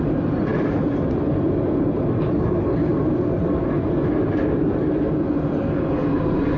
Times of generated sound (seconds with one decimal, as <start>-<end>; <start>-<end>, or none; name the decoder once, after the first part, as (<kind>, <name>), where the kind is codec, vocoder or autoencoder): none